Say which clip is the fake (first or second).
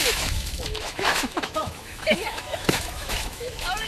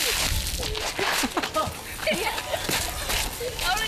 first